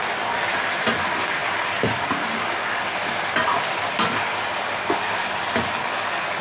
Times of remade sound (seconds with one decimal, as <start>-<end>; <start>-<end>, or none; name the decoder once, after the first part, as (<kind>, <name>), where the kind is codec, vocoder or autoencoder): none